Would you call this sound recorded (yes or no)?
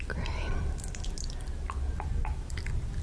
no